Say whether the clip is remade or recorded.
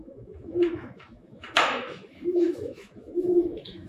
remade